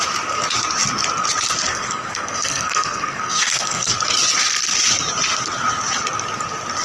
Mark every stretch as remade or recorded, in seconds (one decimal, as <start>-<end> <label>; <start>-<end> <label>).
0.0-1.7 recorded; 1.7-3.9 remade; 3.9-6.8 recorded